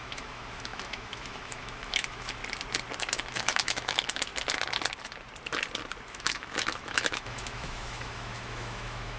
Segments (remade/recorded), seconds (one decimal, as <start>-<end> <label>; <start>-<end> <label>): 0.0-2.4 remade; 2.4-3.0 recorded; 3.0-4.3 remade; 4.3-6.1 recorded; 6.1-9.2 remade